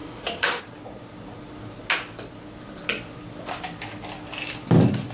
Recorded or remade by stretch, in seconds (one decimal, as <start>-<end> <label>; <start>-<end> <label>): 0.0-0.6 remade; 0.6-5.1 recorded